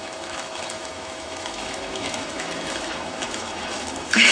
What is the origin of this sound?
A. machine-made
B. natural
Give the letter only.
A